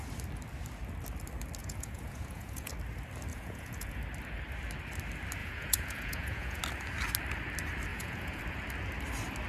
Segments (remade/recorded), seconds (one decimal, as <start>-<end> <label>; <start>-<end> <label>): 0.0-1.6 recorded; 1.6-2.7 remade; 2.7-3.3 recorded; 3.3-4.0 remade; 4.0-5.4 recorded; 5.4-6.6 remade; 6.6-7.9 recorded; 7.9-8.4 remade; 8.4-9.5 recorded